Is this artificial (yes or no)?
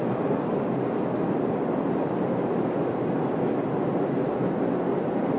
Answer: no